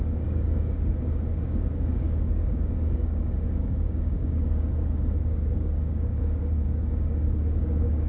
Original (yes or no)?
no